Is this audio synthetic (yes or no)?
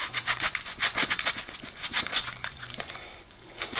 yes